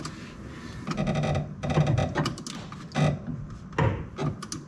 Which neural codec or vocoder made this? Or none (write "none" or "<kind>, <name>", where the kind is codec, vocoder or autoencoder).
none